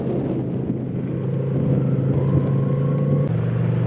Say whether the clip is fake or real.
real